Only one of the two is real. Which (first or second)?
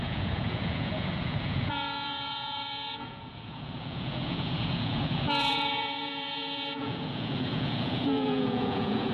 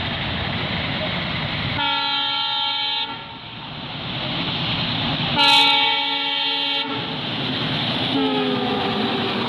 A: second